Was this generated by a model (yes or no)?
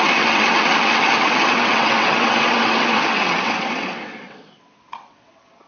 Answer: yes